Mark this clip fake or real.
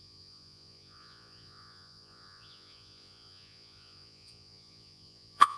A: fake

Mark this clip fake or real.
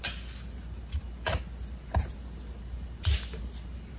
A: real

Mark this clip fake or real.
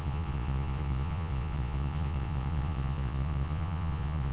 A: fake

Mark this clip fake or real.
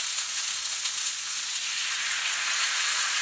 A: fake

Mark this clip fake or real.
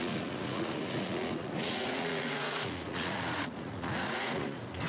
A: fake